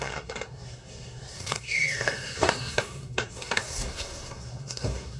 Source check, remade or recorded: remade